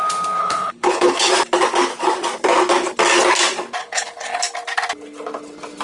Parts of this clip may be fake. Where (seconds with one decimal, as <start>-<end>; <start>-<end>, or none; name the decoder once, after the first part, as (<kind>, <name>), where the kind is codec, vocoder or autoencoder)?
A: 0.4-1.3 (codec, HILCodec); 3.8-4.4